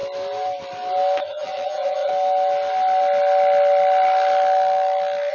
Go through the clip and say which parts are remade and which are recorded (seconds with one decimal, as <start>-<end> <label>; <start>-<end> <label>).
0.0-1.2 recorded; 1.2-2.1 remade; 2.1-5.3 recorded